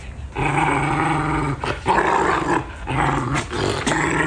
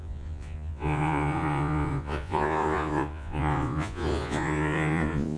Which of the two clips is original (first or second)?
first